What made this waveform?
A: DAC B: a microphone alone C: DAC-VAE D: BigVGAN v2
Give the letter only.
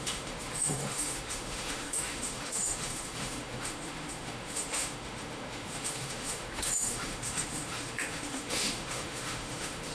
C